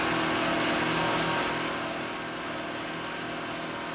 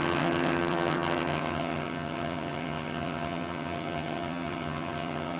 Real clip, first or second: first